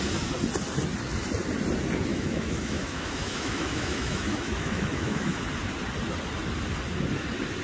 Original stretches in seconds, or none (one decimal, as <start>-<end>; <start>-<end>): 0.0-2.1; 5.4-7.6